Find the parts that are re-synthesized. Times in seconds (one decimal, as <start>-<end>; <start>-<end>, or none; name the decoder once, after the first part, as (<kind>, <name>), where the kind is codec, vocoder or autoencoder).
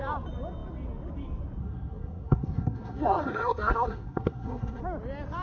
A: 1.6-4.8 (codec, SNAC)